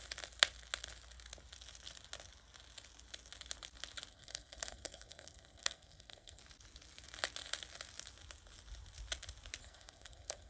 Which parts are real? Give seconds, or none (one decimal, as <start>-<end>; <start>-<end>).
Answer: 0.0-4.1; 6.4-9.6